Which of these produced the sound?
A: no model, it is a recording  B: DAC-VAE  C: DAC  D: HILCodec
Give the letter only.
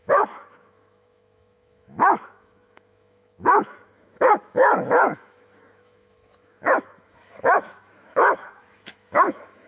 B